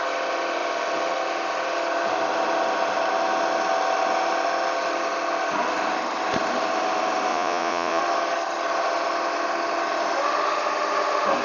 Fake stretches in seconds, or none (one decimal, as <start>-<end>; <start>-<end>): 7.3-8.0

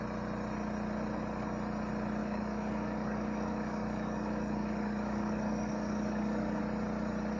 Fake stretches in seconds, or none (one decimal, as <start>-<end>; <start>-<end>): 2.2-6.6